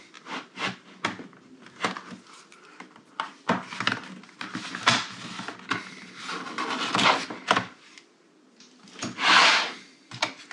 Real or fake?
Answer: real